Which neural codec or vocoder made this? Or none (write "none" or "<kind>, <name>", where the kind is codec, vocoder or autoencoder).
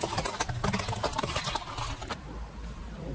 none